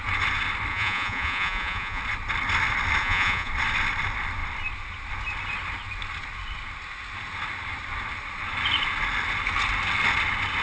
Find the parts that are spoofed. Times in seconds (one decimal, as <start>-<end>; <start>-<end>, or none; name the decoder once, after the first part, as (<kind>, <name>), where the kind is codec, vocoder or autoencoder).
0.7-2.0 (vocoder, Vocos); 3.0-3.5